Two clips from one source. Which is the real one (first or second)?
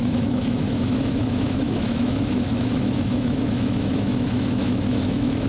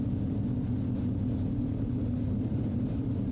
second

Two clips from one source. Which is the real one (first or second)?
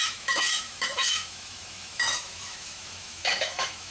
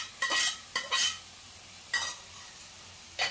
second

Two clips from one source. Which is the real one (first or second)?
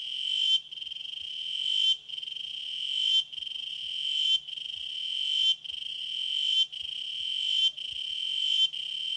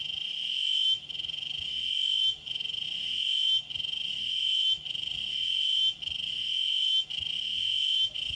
first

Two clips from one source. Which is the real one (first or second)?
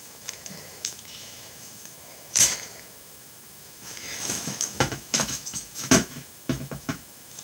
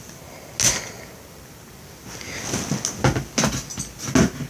second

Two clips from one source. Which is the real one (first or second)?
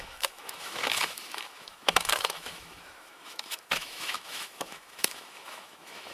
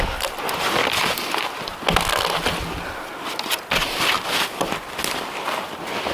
second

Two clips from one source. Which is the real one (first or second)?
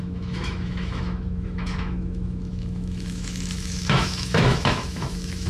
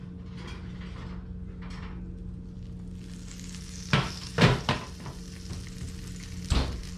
second